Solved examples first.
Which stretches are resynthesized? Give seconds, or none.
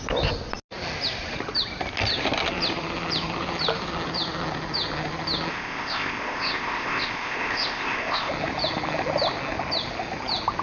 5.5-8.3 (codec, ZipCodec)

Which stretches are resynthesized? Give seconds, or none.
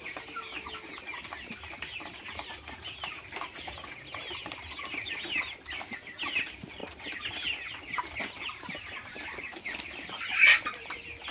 none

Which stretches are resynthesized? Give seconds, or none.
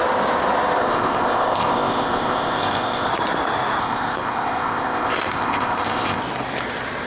0.8-3.1 (codec, ZipCodec); 3.8-6.2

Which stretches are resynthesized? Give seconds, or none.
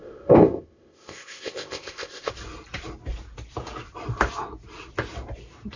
0.0-2.3 (codec, ZipCodec)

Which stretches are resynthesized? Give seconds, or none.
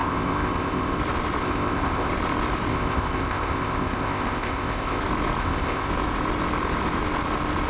0.0-1.0 (codec, ZipCodec); 1.4-2.1; 2.7-5.0; 5.4-5.9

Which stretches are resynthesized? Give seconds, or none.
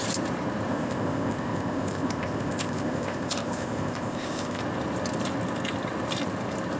0.7-4.6 (codec, ZipCodec)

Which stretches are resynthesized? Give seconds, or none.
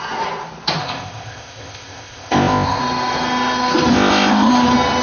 0.8-2.8 (codec, ZipCodec); 3.9-4.5